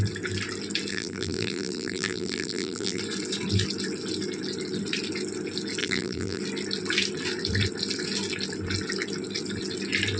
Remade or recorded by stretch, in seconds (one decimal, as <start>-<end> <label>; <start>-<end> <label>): 0.0-0.9 recorded; 0.9-3.0 remade; 3.0-5.8 recorded; 5.8-6.4 remade; 6.4-10.2 recorded